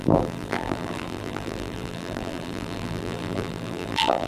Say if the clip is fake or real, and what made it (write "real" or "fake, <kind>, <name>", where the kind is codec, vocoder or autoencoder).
fake, vocoder, BigVGAN v2